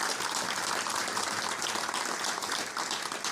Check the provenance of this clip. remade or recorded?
recorded